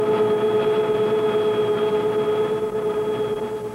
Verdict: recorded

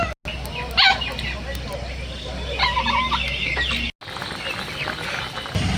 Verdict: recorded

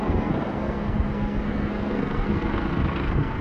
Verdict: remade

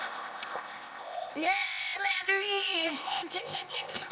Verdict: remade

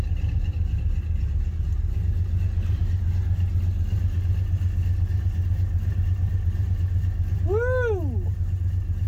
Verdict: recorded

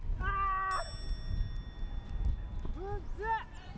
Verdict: recorded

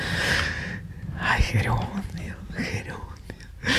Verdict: remade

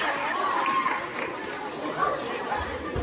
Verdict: recorded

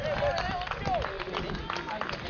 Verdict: recorded